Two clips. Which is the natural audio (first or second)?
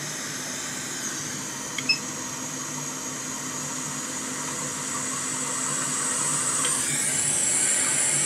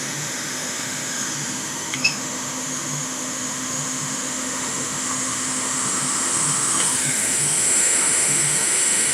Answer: first